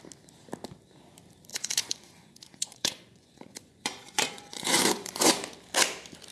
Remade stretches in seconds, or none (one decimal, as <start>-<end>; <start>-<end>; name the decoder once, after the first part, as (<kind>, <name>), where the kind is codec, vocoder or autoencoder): 1.5-5.3 (vocoder, Vocos)